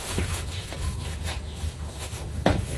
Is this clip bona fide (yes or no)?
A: no